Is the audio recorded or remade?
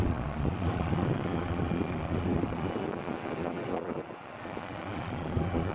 remade